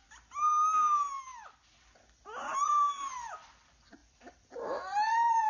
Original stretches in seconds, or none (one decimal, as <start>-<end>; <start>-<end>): 0.0-2.2